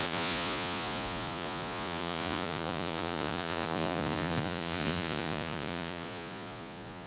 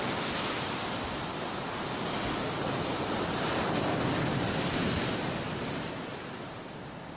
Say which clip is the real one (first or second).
second